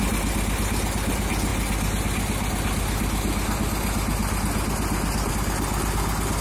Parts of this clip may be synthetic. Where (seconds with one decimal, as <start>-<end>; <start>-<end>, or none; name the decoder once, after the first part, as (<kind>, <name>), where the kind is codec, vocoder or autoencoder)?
none